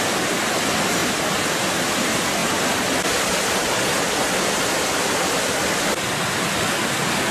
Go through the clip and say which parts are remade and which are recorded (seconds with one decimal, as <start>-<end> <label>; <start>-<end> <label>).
0.0-7.3 recorded